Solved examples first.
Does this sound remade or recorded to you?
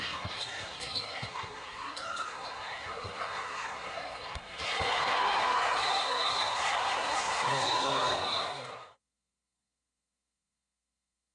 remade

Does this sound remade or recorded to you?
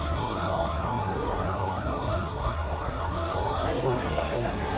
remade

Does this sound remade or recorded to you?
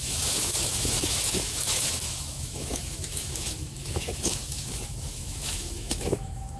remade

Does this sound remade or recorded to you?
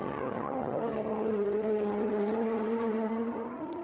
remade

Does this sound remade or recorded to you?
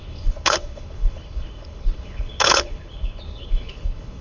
remade